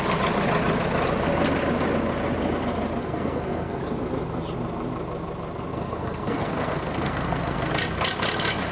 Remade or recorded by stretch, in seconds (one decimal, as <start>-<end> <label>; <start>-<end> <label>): 0.0-3.0 recorded; 3.0-3.8 remade; 3.8-5.7 recorded; 5.7-7.7 remade; 7.7-8.7 recorded